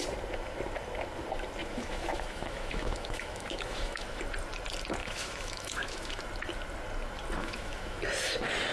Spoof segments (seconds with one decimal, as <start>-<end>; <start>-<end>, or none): 1.6-4.2; 5.0-6.2; 7.4-8.0